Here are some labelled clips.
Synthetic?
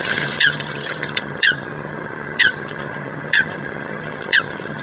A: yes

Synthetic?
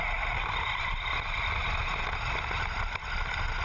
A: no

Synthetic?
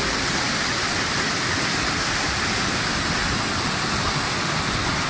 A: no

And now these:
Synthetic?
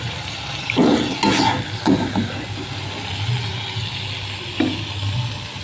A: no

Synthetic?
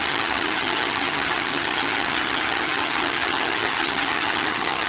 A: yes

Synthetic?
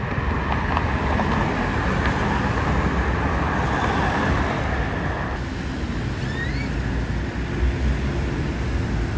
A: no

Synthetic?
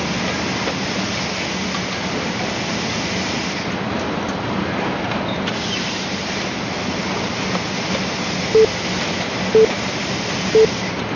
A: no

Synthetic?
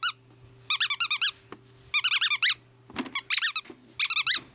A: no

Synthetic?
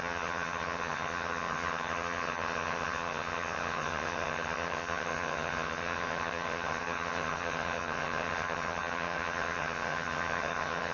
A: yes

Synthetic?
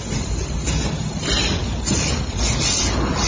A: no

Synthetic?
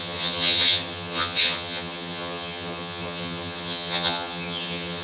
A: yes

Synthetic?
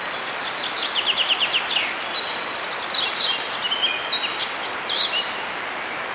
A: no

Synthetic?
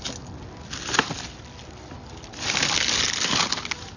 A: no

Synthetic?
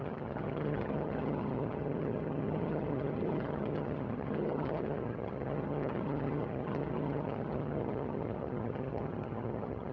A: yes